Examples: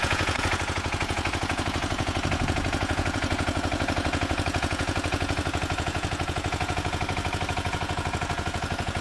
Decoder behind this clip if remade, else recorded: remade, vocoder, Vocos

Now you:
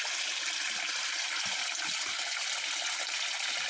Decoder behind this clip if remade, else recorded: recorded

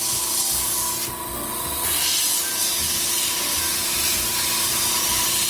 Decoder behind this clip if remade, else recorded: recorded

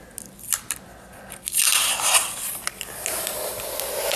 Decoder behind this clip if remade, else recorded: recorded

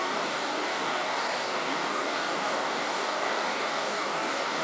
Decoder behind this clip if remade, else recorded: remade, codec, DAC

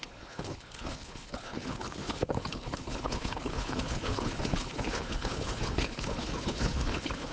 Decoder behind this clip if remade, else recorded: remade, codec, HILCodec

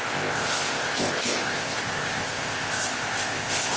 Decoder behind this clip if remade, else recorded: remade, codec, ZipCodec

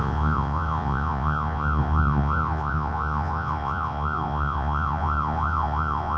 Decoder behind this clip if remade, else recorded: remade, vocoder, Vocos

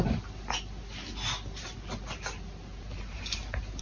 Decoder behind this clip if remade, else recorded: recorded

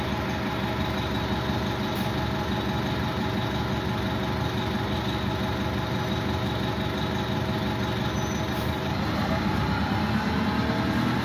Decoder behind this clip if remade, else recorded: recorded